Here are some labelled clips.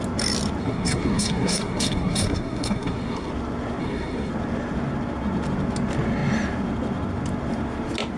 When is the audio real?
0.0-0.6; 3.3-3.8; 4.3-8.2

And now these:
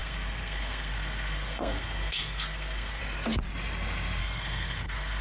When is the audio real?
3.0-4.2